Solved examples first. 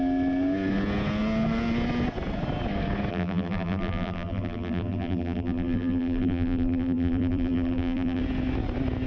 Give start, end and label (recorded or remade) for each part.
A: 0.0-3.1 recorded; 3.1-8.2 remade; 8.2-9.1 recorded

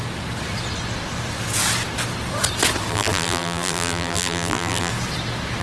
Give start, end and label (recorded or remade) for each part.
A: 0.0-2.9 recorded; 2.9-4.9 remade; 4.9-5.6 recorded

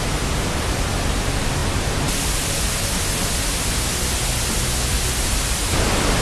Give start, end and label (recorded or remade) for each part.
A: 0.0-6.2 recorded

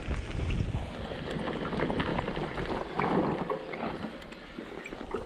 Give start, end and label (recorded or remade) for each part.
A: 0.0-2.1 recorded; 2.1-5.3 remade